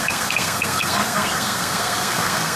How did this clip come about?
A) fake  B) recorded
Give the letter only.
A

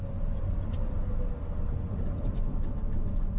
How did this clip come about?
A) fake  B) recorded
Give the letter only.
B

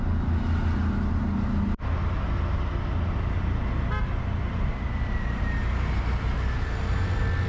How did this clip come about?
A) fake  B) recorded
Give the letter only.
B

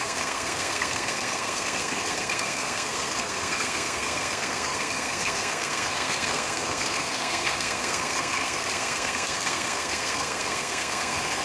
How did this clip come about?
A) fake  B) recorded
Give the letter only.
A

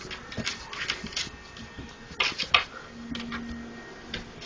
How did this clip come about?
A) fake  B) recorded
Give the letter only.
B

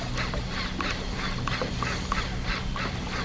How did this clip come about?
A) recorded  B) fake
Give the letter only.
A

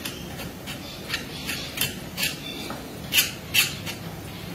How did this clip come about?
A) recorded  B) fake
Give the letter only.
A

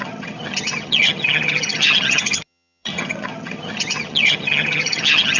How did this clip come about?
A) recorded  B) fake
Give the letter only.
B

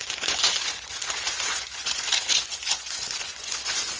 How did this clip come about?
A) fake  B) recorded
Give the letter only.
A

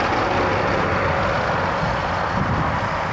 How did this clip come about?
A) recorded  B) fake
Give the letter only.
B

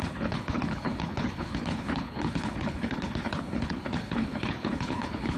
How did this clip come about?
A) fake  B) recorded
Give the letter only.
A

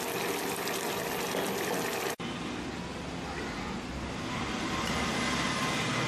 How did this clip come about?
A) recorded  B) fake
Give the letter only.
A